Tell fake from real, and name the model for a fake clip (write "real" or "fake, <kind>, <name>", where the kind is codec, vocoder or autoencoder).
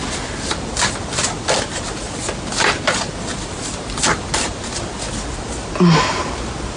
real